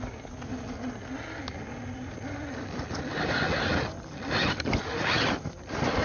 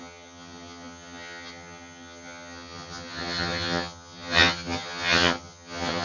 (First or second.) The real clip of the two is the first